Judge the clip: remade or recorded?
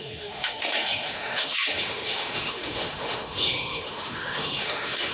remade